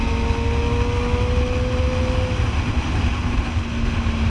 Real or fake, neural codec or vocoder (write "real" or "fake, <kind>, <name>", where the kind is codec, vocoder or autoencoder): real